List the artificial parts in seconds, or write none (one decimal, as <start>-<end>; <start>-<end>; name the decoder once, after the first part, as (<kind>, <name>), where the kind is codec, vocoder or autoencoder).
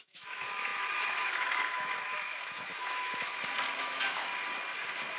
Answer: 0.0-3.3 (autoencoder, DAC-VAE); 3.8-4.3